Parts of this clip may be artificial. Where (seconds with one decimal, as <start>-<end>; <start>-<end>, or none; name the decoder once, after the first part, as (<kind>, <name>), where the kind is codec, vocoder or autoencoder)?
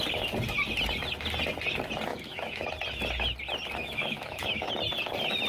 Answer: 2.1-2.7 (autoencoder, DAC-VAE); 3.8-4.7